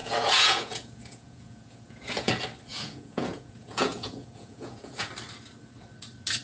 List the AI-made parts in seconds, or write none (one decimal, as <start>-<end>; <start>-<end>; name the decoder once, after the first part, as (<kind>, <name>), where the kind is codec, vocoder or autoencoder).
0.0-2.3 (vocoder, Vocos); 2.7-5.1